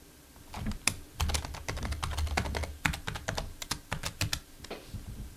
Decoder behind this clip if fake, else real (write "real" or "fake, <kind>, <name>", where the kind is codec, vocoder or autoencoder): real